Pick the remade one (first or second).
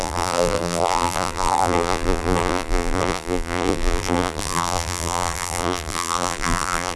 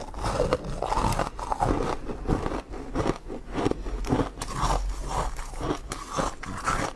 first